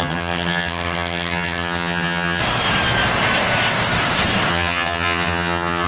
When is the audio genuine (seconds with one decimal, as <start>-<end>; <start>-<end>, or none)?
2.4-4.5

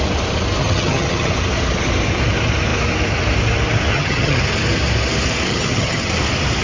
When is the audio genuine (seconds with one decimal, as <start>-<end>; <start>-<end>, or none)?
0.0-0.6; 1.3-3.9; 4.4-5.5; 6.1-6.6